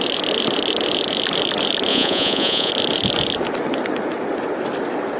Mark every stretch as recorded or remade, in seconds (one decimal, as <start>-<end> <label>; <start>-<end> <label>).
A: 0.0-1.9 recorded; 1.9-2.7 remade; 2.7-5.2 recorded